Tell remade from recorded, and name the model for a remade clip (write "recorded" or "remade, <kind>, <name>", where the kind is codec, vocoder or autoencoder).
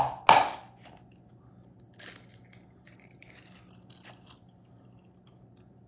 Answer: recorded